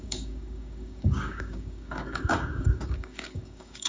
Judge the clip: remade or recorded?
remade